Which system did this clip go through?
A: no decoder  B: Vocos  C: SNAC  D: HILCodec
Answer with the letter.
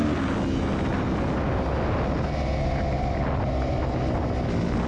A